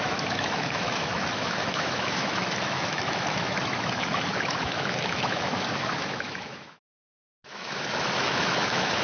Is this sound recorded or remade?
remade